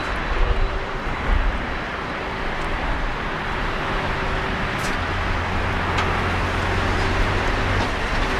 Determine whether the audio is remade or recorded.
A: recorded